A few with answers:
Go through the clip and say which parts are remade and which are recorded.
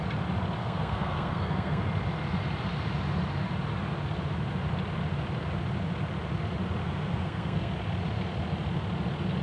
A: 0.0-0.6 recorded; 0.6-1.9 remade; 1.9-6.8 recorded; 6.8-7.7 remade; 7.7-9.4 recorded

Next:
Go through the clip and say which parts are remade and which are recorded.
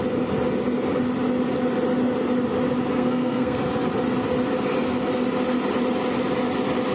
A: 0.0-2.9 recorded; 2.9-3.6 remade; 3.6-6.9 recorded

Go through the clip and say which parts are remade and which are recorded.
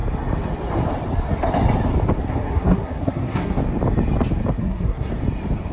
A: 0.0-2.4 recorded; 2.4-3.6 remade; 3.6-4.6 recorded; 4.6-5.1 remade; 5.1-5.7 recorded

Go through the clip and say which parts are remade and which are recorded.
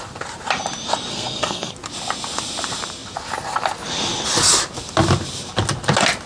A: 0.0-1.1 recorded; 1.1-1.7 remade; 1.7-6.3 recorded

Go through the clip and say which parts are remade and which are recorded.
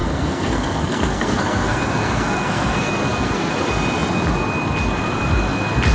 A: 0.0-3.5 remade; 3.5-5.9 recorded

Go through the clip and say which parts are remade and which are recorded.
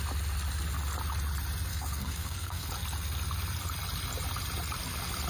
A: 0.0-1.7 recorded; 1.7-2.7 remade; 2.7-5.3 recorded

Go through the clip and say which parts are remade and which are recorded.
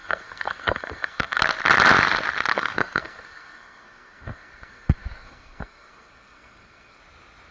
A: 0.0-1.4 remade; 1.4-2.5 recorded; 2.5-7.0 remade; 7.0-7.5 recorded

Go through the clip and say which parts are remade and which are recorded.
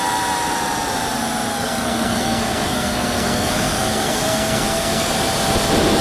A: 0.0-1.5 recorded; 1.5-5.1 remade; 5.1-6.0 recorded